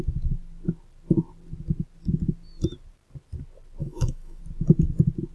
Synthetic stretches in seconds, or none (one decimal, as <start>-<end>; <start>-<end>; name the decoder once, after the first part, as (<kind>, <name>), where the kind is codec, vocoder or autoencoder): 3.8-4.4 (autoencoder, DAC-VAE)